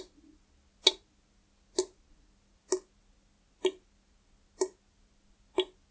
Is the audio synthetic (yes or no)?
no